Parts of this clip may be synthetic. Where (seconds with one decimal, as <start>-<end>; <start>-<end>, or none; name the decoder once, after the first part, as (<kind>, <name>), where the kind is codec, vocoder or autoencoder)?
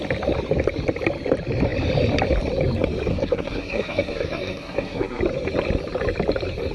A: 3.1-5.2 (codec, SNAC)